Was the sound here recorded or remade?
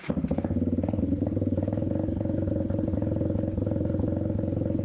recorded